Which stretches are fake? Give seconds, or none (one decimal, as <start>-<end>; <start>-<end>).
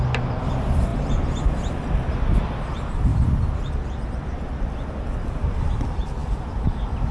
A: 3.1-3.7